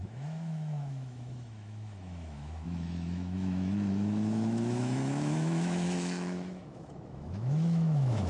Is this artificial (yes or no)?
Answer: yes